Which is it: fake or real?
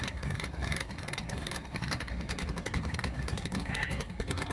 fake